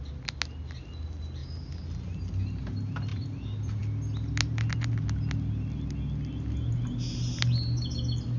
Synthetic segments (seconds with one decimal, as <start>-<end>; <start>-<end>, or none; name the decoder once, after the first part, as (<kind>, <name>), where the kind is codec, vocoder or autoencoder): 3.1-3.8 (vocoder, BigVGAN v2)